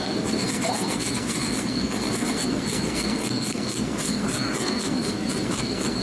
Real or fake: fake